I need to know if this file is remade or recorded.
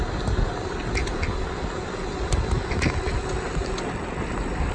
recorded